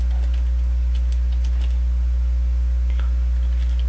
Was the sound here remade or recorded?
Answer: recorded